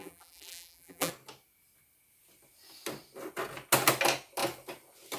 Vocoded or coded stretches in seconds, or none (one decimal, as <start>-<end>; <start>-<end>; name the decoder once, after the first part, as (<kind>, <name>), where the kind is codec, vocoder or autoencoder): 0.0-1.1 (vocoder, BigVGAN v2)